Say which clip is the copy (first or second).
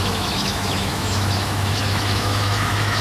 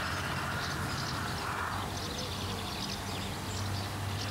first